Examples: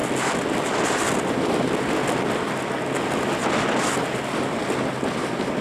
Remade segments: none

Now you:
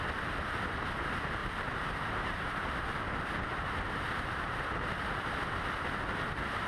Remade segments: 1.4-3.0 (vocoder, BigVGAN v2); 3.5-4.5

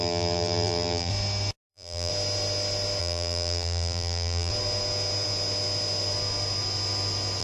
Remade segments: 0.0-1.1 (vocoder, BigVGAN v2); 1.7-2.1; 3.0-4.5

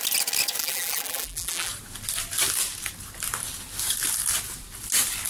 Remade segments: 0.6-1.7 (vocoder, BigVGAN v2)

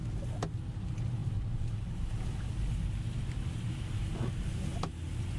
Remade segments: none

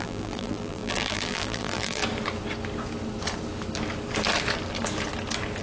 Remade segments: 0.0-2.0 (vocoder, BigVGAN v2)

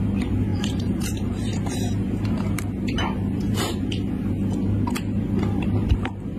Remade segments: 0.5-4.3 (vocoder, BigVGAN v2)